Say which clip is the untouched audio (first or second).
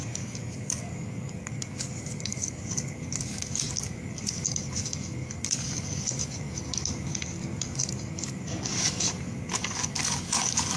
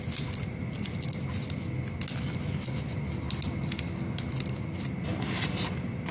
second